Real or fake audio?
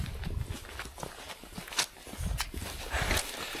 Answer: real